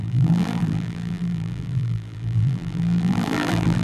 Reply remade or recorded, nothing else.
remade